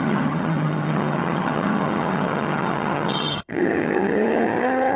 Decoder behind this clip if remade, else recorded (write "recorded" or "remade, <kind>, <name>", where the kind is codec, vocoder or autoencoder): remade, vocoder, HiFi-GAN